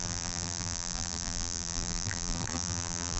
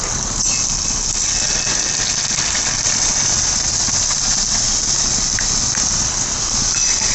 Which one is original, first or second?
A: second